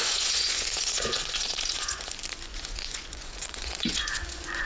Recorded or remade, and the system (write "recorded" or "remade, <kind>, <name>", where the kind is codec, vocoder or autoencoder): remade, vocoder, Vocos